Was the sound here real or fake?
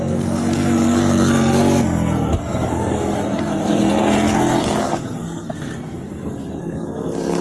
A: fake